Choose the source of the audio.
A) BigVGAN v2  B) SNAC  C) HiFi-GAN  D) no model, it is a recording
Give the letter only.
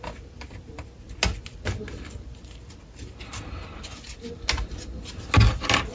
D